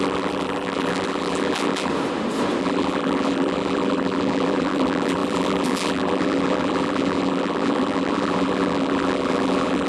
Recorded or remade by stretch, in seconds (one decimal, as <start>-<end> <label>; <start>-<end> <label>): 0.0-1.9 remade; 1.9-2.6 recorded; 2.6-9.9 remade

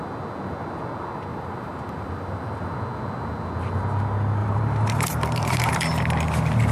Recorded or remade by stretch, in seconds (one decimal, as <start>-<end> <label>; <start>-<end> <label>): 0.0-1.3 recorded; 1.3-2.4 remade; 2.4-4.4 recorded; 4.4-5.7 remade; 5.7-6.7 recorded

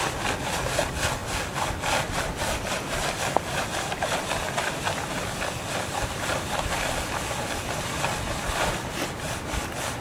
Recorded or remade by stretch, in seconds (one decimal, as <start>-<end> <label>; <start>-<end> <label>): 0.0-1.2 recorded; 1.2-6.4 remade; 6.4-10.0 recorded

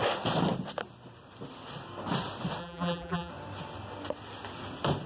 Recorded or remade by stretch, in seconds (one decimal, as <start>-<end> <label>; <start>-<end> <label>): 0.0-2.6 recorded; 2.6-3.3 remade; 3.3-5.1 recorded